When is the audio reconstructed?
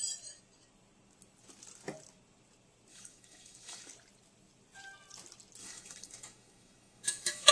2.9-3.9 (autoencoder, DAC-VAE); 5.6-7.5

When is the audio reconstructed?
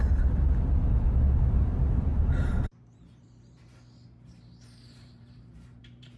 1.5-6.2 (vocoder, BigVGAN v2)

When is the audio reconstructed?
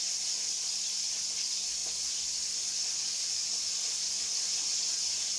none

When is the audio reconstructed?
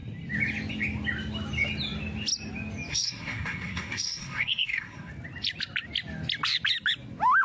2.9-5.1 (codec, SNAC)